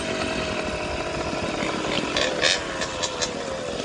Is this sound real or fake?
real